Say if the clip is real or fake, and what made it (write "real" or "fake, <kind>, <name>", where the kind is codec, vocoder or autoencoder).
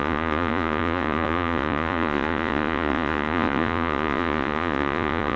fake, vocoder, Vocos